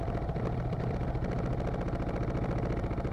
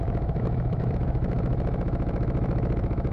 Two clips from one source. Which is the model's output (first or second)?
second